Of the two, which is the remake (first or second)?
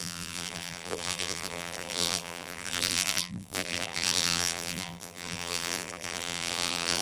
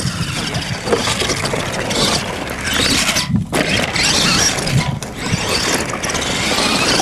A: first